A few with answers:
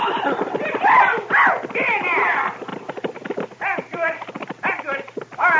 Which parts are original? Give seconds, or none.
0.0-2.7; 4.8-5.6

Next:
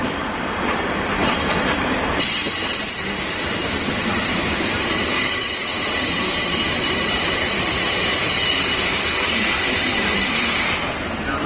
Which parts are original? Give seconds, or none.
none

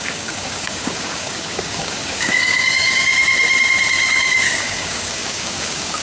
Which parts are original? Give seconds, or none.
3.3-4.2

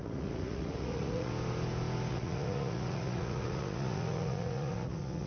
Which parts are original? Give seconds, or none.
1.3-2.1

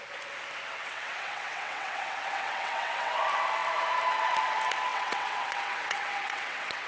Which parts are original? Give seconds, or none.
0.0-0.7; 3.2-4.9

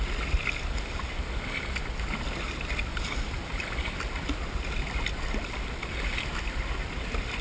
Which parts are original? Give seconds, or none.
0.0-2.9; 3.8-7.4